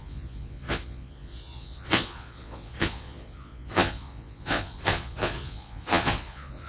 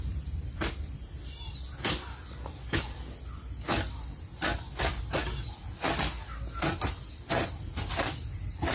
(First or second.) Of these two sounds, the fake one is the first